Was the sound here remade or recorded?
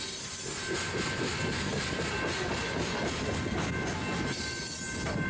recorded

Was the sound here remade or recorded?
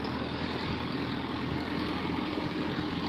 remade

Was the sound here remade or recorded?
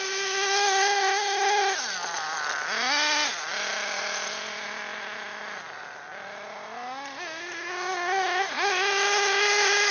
recorded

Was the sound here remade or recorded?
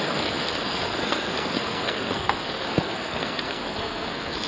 remade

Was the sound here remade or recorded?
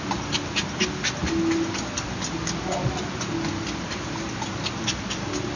recorded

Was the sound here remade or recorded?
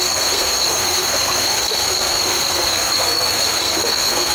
remade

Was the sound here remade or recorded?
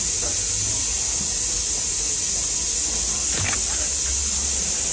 recorded